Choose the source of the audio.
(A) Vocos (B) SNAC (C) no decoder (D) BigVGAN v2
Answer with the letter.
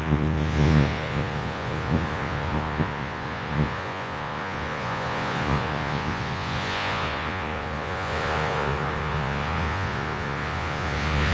A